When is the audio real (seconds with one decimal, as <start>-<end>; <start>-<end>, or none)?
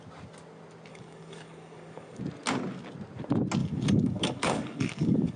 0.0-0.9; 2.2-3.6